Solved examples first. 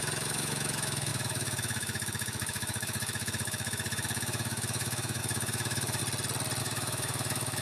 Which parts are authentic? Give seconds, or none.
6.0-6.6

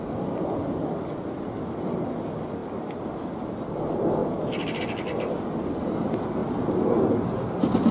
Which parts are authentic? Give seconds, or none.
0.0-7.9

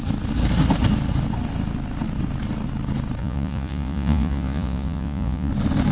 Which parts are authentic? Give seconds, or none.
0.0-3.2; 5.5-5.9

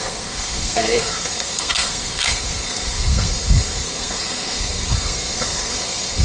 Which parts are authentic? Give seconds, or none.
none

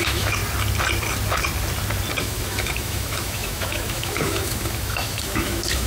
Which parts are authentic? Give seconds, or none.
0.4-2.2

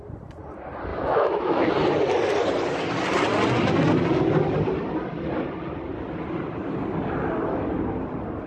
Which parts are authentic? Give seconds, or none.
0.0-0.9; 1.7-8.5

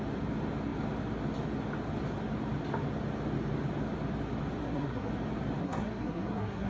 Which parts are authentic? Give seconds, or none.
0.0-4.6; 5.1-5.6